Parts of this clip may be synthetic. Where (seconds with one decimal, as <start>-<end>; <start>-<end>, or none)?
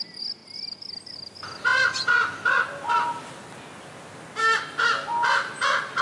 none